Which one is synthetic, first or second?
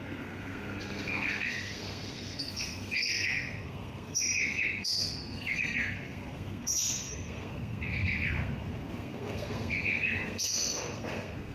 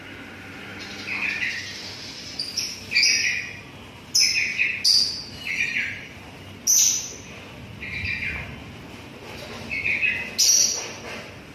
first